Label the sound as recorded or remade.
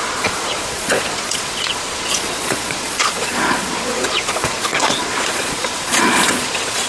remade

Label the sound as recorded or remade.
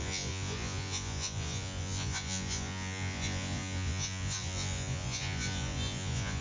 remade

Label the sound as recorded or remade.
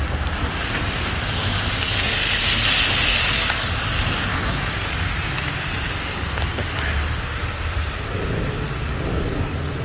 recorded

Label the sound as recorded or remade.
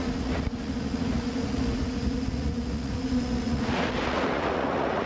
remade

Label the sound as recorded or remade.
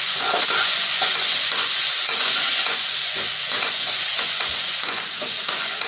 remade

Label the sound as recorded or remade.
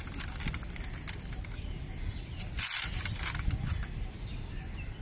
recorded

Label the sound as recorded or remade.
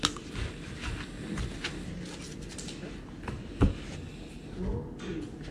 recorded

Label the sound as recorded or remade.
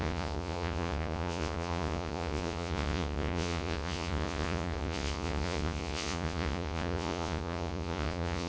remade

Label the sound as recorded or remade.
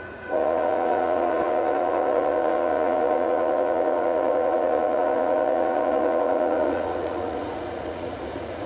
remade